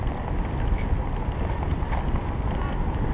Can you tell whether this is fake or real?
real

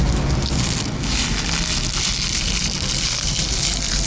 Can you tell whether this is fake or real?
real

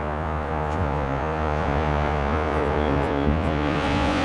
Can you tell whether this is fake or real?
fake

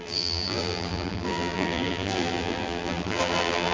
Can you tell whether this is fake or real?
fake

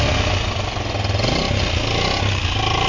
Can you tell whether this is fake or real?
real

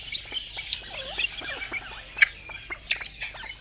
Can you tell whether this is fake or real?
real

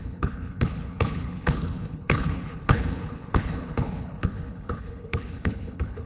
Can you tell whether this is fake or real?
fake